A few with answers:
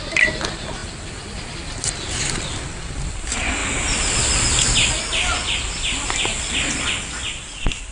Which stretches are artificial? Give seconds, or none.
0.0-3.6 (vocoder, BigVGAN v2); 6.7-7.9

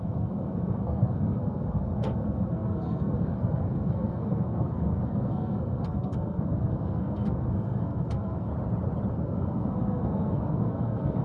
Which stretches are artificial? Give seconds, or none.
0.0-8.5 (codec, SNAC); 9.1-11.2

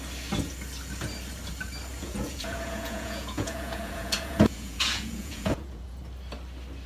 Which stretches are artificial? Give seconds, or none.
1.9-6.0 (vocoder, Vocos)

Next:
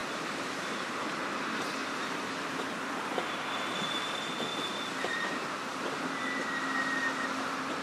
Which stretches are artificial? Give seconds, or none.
0.0-1.0 (vocoder, BigVGAN v2); 1.8-3.1; 4.5-6.2